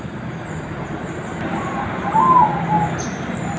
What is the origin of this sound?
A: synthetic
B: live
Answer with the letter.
B